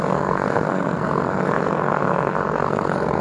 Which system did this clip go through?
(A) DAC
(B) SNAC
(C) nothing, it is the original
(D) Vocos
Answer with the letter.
B